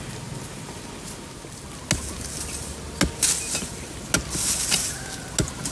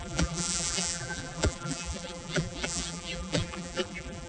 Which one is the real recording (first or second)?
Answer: first